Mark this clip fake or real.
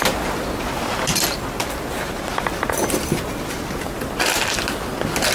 real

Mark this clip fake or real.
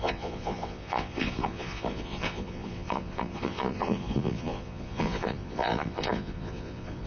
fake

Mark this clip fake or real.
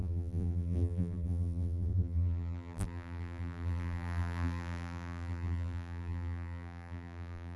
fake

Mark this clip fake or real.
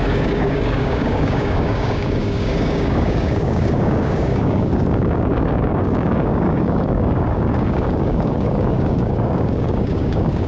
fake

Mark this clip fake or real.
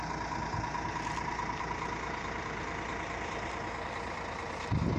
real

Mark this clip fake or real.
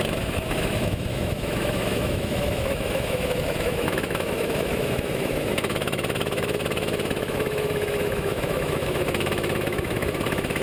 fake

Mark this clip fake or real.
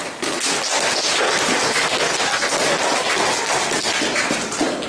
real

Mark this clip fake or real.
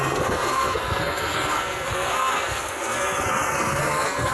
fake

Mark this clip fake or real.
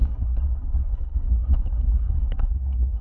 fake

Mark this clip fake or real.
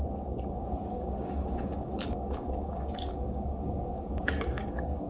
fake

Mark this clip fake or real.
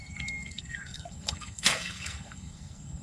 fake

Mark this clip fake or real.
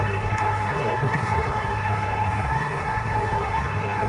fake